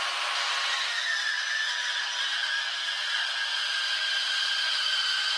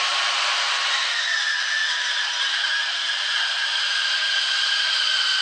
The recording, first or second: first